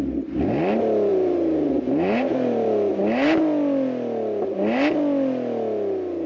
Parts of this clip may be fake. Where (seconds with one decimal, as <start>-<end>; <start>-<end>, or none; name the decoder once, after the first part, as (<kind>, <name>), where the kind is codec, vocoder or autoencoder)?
1.1-2.9 (vocoder, BigVGAN v2)